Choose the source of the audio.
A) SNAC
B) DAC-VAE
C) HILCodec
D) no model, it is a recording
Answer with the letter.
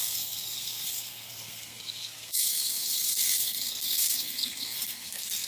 A